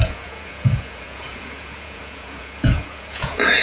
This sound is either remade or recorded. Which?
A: remade